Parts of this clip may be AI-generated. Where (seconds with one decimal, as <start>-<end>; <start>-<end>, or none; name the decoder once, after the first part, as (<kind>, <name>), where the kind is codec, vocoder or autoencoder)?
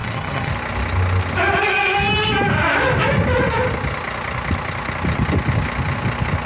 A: 0.0-0.5 (vocoder, HiFi-GAN)